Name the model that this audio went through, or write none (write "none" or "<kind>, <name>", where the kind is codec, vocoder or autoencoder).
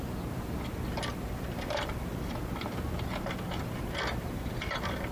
none